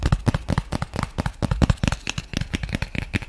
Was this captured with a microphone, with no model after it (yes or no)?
yes